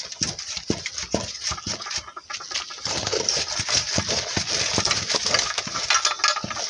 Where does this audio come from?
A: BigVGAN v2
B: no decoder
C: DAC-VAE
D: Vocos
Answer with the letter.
B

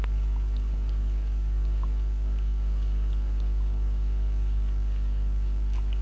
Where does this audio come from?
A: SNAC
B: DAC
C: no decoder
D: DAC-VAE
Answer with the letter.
B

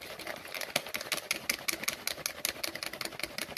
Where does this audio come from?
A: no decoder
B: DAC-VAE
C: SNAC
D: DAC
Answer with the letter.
A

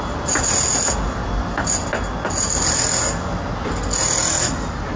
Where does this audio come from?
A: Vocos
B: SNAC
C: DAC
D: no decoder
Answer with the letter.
D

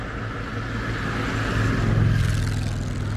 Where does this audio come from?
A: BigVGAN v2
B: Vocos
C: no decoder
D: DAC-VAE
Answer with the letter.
C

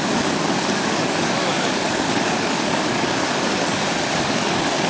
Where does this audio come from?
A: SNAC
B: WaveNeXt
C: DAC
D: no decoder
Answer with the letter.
C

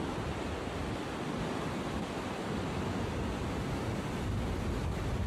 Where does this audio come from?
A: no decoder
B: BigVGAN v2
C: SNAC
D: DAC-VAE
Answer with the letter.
A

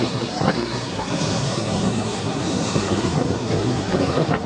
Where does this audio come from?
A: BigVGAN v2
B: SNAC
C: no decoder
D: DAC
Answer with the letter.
B